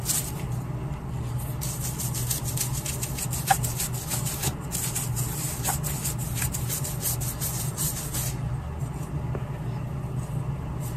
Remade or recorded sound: recorded